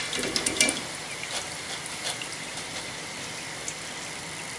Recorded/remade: recorded